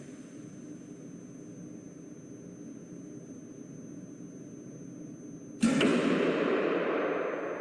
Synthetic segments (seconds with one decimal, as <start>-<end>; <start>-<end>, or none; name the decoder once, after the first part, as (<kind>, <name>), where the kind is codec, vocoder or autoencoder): 5.9-7.0 (vocoder, BigVGAN v2)